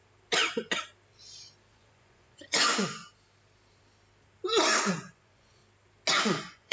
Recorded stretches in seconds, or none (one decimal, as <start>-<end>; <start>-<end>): 0.0-1.7; 3.0-4.9; 5.6-6.2

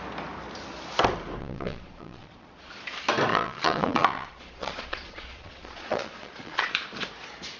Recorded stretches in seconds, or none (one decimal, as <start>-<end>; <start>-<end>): 0.0-1.4; 2.7-3.3; 6.7-7.6

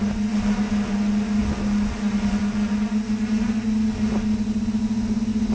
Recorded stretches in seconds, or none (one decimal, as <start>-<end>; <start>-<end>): 0.0-5.5

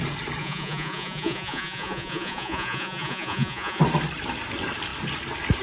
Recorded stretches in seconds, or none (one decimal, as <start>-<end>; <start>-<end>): 0.0-0.4; 3.8-5.6

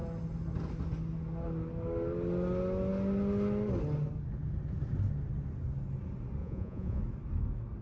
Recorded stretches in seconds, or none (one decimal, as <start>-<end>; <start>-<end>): 0.0-6.4; 7.0-7.8

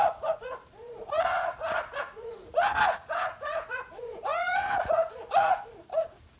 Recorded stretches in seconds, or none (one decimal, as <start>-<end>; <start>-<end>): none

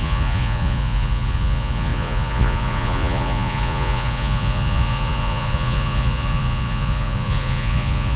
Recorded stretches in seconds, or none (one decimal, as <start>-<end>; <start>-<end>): none